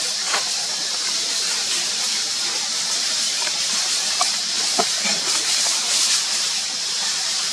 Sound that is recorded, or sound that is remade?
remade